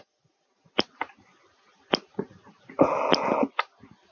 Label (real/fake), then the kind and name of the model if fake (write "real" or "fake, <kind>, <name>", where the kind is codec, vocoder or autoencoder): real